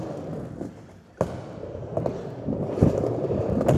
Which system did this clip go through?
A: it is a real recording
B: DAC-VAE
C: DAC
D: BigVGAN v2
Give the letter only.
A